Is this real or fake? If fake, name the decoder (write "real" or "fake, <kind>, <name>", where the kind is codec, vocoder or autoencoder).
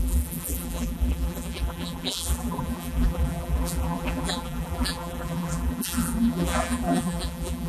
fake, vocoder, BigVGAN v2